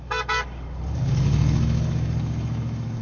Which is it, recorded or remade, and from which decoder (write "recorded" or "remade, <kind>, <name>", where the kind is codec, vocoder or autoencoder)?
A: remade, codec, DAC